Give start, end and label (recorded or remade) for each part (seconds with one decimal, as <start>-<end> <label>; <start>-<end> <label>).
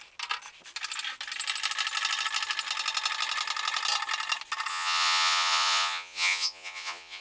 0.0-4.7 recorded; 4.7-7.2 remade